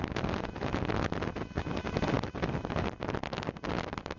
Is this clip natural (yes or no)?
yes